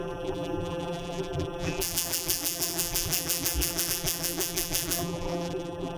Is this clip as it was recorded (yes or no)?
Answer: no